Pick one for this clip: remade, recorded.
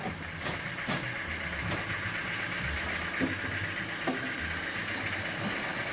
recorded